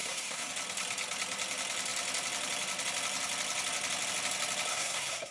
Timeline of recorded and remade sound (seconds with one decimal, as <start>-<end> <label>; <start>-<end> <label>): 0.0-0.5 remade; 0.5-4.7 recorded; 4.7-5.3 remade